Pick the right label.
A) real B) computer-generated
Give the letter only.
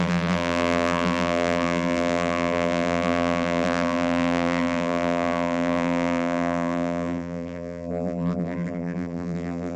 B